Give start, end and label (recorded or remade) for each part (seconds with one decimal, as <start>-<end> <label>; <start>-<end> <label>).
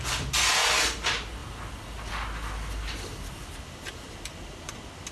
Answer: 0.0-5.1 recorded